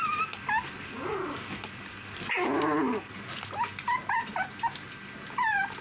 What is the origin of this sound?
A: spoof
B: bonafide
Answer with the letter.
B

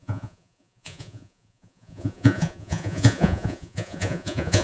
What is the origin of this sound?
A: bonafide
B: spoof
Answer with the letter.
B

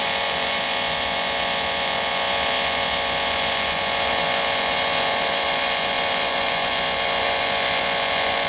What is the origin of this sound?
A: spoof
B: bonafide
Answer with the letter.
A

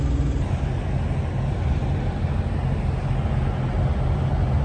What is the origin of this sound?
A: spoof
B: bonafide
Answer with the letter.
B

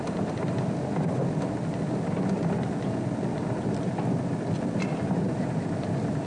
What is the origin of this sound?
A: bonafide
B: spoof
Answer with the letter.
A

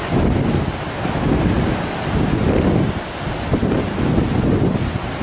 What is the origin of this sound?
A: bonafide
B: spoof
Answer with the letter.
A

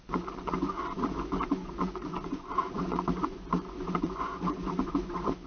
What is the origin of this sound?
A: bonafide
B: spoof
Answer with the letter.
B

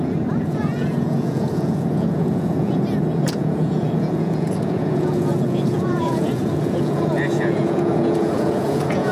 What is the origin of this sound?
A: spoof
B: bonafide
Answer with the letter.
A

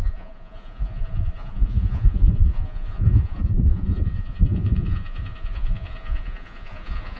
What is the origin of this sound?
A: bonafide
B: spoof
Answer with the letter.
B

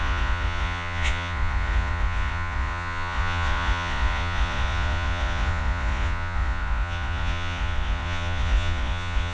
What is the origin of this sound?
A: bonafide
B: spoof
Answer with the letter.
B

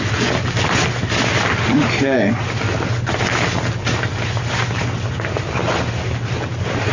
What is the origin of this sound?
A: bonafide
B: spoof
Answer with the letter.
A